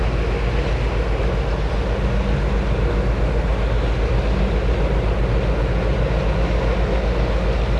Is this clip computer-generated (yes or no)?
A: no